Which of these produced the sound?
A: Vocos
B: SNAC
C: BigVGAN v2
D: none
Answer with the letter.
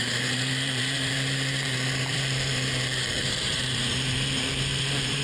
C